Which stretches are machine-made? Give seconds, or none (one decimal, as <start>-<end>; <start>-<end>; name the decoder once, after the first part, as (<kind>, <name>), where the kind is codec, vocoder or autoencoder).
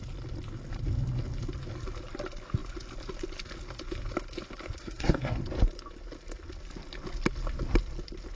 4.8-5.4 (codec, SNAC)